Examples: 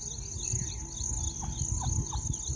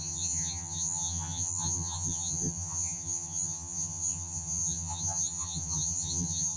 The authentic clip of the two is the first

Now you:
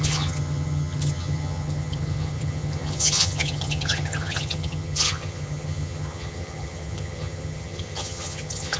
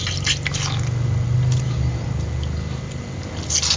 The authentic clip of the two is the second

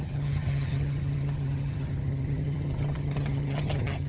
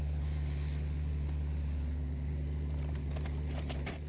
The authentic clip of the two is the second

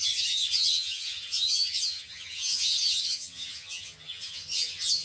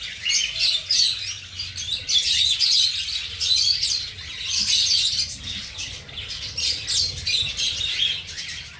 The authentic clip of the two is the second